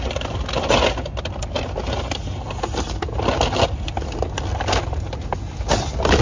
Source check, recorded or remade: recorded